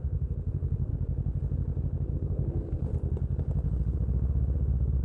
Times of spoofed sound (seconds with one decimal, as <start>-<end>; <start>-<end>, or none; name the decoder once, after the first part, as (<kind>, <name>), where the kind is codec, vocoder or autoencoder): 0.0-0.9 (codec, SNAC); 2.1-2.9